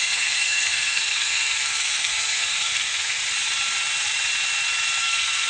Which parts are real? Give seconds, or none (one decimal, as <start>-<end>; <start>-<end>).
3.2-5.0